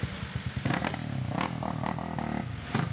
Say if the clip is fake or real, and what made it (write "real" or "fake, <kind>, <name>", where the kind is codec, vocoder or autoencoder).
real